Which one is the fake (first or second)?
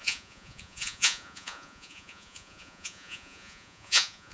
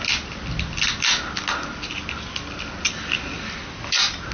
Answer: first